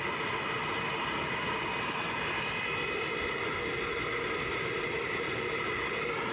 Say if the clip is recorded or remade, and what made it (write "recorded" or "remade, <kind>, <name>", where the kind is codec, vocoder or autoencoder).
recorded